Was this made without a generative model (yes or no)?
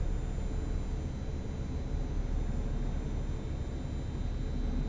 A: yes